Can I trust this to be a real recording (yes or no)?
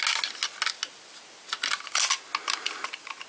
yes